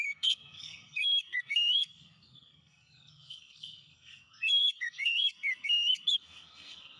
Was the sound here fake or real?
fake